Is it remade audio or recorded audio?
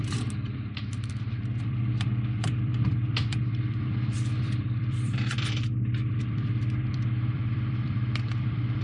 remade